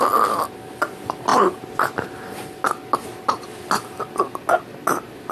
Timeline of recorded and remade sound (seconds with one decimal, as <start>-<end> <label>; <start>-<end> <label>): 0.0-5.3 recorded